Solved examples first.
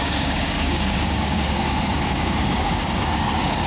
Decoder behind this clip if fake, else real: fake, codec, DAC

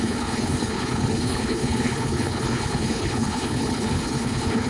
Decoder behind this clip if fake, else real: fake, codec, HILCodec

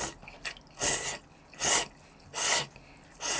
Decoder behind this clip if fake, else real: real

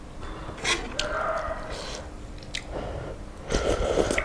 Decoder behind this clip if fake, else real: real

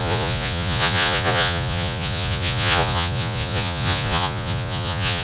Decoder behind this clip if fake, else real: fake, vocoder, Vocos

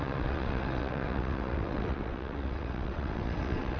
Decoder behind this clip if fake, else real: fake, vocoder, WaveNeXt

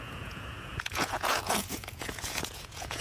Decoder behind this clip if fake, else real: fake, vocoder, Vocos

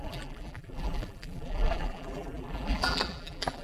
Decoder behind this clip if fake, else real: fake, vocoder, BigVGAN v2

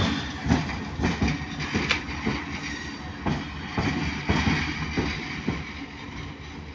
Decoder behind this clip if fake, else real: real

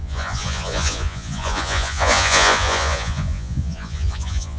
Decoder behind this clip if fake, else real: fake, vocoder, Vocos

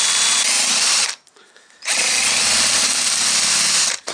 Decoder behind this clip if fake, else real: real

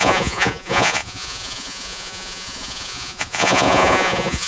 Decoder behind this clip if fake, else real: fake, vocoder, Vocos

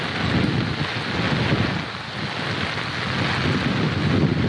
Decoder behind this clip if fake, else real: real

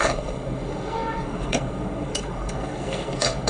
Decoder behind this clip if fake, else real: fake, codec, SNAC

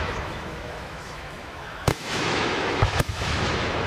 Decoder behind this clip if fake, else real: fake, autoencoder, DAC-VAE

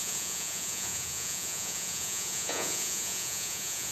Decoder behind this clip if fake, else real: fake, vocoder, Vocos